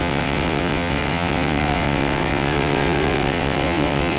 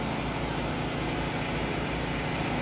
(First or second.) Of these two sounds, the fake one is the first